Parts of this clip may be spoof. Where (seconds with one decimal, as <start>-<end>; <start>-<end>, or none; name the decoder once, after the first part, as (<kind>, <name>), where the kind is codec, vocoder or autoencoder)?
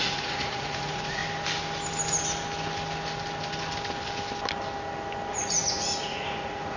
0.0-1.2 (vocoder, Vocos); 5.3-6.8